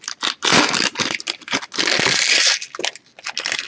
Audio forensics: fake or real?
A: real